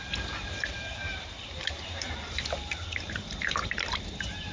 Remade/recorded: remade